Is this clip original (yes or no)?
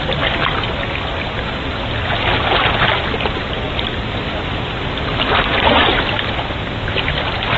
yes